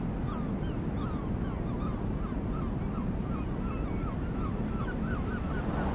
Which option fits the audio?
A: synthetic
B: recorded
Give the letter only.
A